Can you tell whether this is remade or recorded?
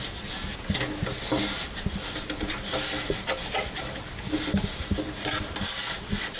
recorded